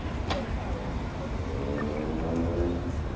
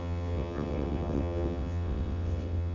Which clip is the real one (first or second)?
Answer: first